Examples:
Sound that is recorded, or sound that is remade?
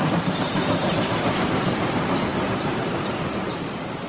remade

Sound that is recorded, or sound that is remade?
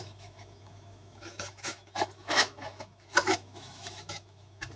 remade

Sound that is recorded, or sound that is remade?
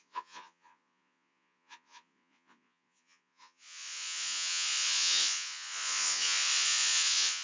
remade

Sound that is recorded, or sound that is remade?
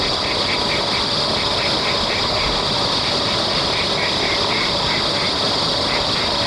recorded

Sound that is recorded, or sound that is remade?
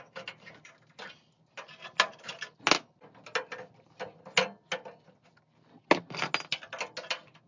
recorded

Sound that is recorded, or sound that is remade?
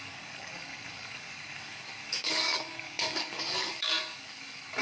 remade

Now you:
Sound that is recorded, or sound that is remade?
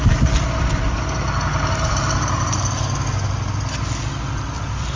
recorded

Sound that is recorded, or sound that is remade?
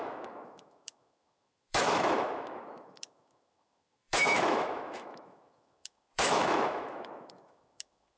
remade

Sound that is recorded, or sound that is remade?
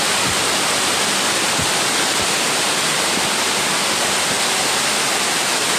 recorded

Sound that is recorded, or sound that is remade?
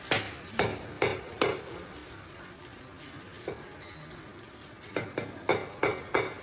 recorded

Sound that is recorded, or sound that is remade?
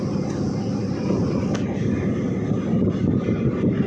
recorded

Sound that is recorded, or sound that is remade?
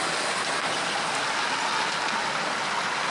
recorded